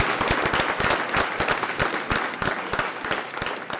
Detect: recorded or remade recorded